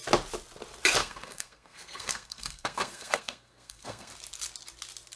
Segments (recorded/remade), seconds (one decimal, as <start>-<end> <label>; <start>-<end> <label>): 0.0-1.0 recorded; 1.0-4.1 remade; 4.1-5.2 recorded